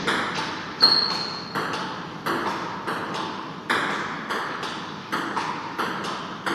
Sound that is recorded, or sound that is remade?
recorded